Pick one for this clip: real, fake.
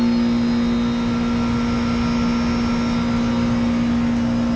real